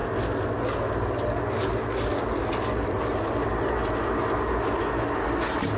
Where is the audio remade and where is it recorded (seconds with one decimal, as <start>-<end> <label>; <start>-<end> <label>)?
0.0-5.8 recorded